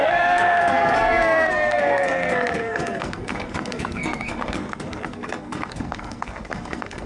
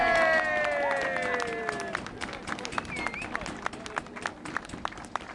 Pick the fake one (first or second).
first